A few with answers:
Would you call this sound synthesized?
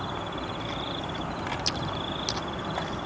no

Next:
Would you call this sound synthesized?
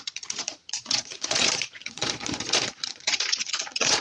yes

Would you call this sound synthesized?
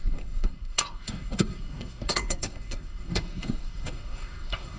yes